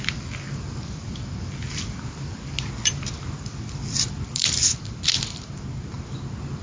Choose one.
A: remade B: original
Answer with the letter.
B